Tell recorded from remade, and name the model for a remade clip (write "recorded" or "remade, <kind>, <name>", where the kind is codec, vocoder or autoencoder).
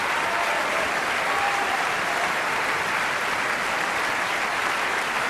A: recorded